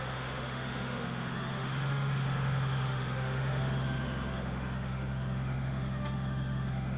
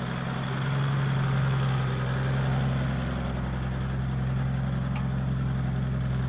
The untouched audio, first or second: second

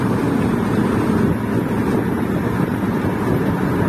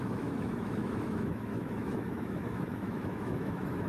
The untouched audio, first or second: first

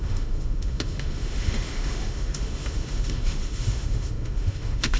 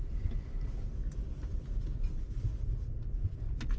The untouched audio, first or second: second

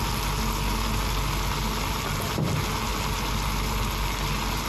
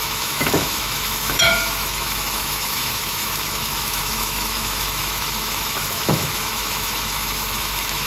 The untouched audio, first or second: first